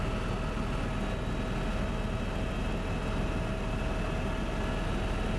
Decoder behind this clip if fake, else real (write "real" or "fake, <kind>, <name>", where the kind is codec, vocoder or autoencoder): real